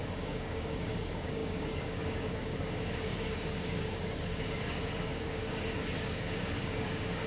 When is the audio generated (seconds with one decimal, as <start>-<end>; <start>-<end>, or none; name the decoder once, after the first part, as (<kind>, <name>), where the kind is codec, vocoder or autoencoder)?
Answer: 0.0-7.3 (codec, DAC)